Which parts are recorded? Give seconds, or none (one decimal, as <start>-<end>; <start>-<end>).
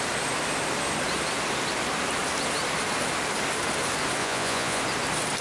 0.0-4.2; 4.8-5.4